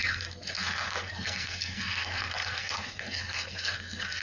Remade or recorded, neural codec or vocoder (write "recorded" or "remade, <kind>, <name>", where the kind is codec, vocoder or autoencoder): remade, codec, SNAC